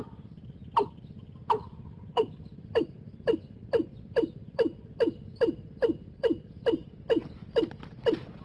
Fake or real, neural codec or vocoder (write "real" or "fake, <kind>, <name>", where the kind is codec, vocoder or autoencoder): real